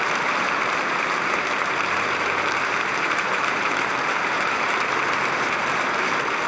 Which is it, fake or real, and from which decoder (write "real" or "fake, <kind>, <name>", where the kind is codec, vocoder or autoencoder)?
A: fake, vocoder, BigVGAN v2